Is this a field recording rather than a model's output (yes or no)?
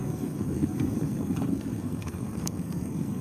no